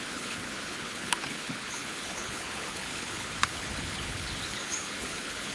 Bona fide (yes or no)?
no